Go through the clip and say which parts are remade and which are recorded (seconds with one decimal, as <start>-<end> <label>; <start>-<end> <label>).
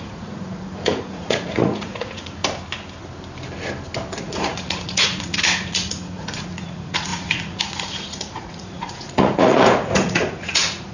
0.0-2.4 remade; 2.4-4.2 recorded; 4.2-10.9 remade